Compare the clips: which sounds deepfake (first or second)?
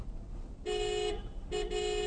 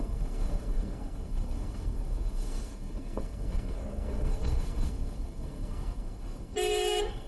second